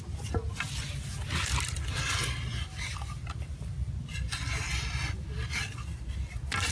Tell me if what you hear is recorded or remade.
recorded